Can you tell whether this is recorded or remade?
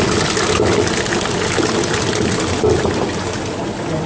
recorded